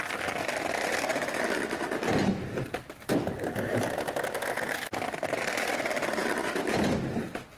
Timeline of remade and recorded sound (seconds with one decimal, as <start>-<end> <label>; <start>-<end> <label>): 0.0-1.1 remade; 1.1-3.2 recorded; 3.2-6.2 remade; 6.2-7.6 recorded